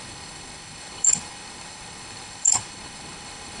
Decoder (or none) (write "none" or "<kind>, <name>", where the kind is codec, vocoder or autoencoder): codec, HILCodec